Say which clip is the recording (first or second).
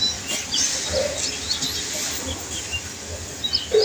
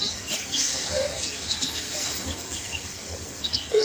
first